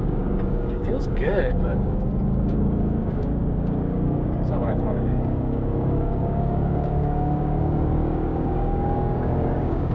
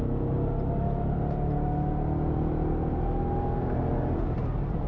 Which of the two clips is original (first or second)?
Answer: second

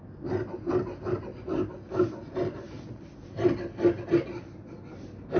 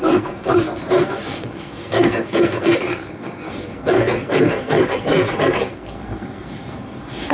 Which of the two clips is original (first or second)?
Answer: first